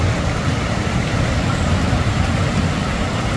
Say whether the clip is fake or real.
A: real